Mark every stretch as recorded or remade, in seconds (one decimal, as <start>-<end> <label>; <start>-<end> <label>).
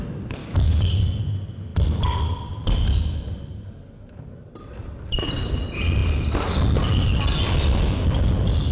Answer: 0.0-0.4 recorded; 0.4-1.2 remade; 1.2-8.7 recorded